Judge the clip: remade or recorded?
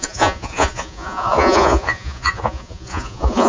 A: remade